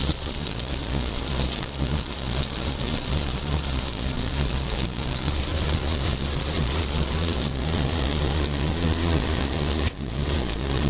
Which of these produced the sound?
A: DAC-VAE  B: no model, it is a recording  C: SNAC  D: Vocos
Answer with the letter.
D